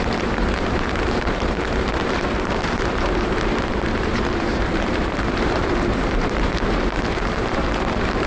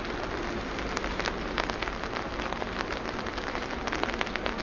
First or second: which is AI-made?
first